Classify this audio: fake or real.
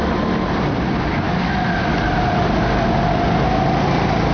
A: real